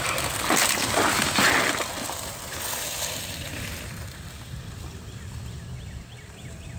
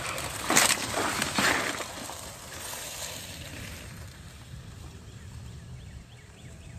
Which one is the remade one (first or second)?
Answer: second